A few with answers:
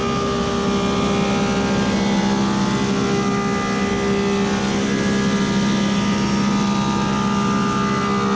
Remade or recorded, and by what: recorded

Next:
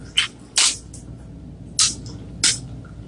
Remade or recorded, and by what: recorded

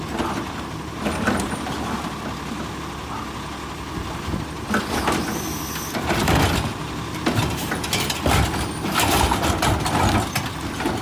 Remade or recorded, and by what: recorded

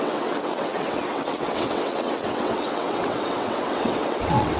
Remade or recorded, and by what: remade, vocoder, WaveNeXt